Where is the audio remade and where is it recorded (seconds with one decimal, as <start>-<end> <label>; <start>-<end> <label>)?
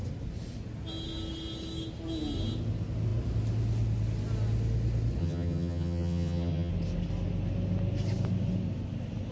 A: 0.0-5.2 recorded; 5.2-6.7 remade; 6.7-9.3 recorded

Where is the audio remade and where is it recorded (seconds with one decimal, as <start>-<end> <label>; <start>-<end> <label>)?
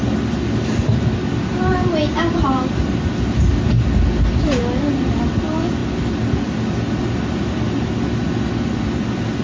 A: 0.0-9.4 recorded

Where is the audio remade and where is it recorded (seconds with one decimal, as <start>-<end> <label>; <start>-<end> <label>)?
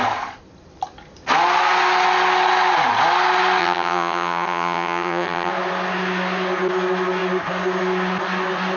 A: 0.0-3.6 recorded; 3.6-5.5 remade; 5.5-8.8 recorded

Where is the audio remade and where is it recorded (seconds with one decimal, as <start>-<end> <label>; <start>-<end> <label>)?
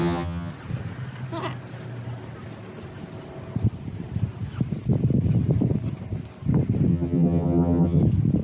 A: 0.0-0.5 remade; 0.5-6.9 recorded; 6.9-8.0 remade; 8.0-8.4 recorded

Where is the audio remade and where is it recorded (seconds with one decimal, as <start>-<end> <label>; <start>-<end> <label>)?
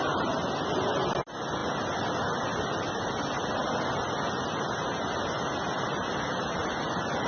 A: 0.0-7.3 recorded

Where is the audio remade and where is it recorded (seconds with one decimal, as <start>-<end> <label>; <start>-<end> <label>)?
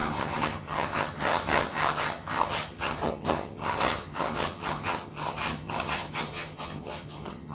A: 0.0-7.5 remade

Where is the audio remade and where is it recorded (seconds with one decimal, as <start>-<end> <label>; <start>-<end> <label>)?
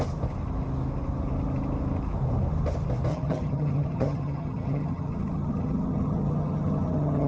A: 0.0-3.1 recorded; 3.1-7.3 remade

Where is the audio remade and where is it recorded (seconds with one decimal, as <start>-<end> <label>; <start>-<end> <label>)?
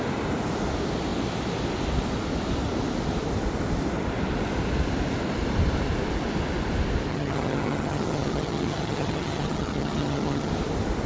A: 0.0-7.1 recorded; 7.1-10.5 remade; 10.5-11.1 recorded